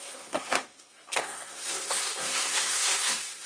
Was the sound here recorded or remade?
remade